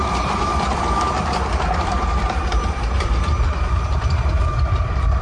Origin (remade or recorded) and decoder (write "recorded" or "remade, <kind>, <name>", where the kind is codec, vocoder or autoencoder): remade, vocoder, BigVGAN v2